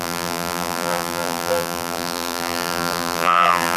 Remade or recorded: remade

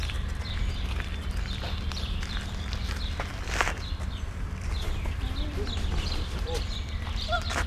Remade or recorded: remade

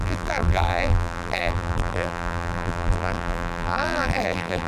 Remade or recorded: remade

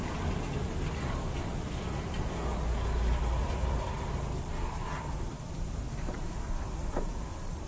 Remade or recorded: remade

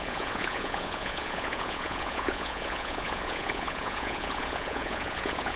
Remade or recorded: remade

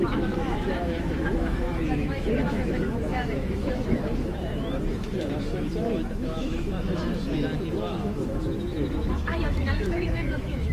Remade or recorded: remade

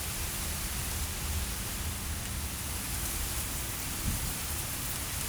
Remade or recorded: recorded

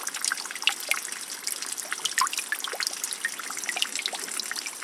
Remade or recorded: recorded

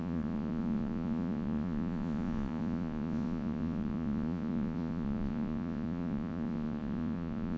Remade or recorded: remade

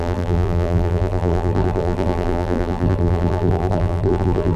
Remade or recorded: remade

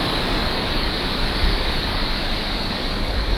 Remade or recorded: remade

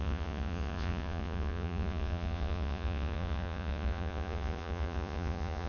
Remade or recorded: remade